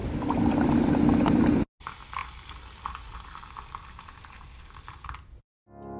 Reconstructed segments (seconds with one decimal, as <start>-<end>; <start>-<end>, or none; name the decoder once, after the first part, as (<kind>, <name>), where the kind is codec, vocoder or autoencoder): none